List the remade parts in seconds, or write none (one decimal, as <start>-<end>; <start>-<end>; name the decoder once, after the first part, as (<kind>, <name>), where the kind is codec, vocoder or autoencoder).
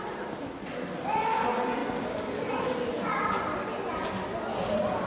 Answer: none